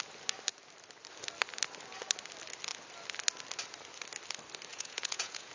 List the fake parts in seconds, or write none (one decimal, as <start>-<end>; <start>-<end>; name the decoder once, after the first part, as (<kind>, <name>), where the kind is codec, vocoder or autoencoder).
4.7-5.5 (vocoder, Vocos)